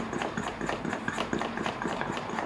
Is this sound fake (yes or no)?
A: yes